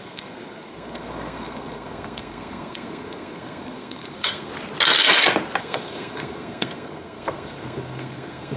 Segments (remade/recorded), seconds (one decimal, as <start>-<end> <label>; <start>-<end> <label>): 0.0-4.5 remade; 4.5-5.6 recorded; 5.6-8.6 remade